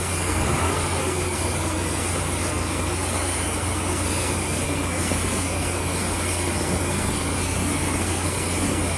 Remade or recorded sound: remade